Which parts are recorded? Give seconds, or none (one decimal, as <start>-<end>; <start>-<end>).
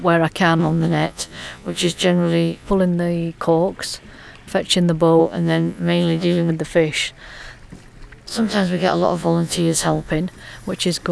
0.0-0.6; 2.7-5.2; 6.5-8.3; 10.1-11.1